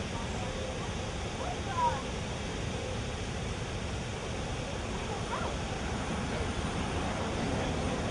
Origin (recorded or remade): recorded